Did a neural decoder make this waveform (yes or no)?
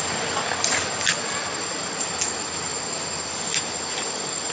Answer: no